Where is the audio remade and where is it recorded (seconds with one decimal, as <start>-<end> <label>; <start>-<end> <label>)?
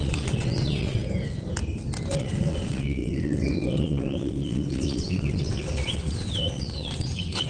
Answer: 0.0-1.0 remade; 1.0-2.1 recorded; 2.1-7.5 remade